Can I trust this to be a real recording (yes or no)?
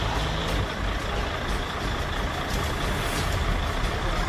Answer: yes